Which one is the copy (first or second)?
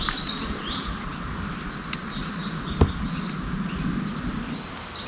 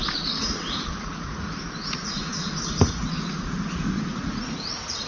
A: second